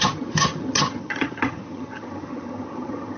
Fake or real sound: fake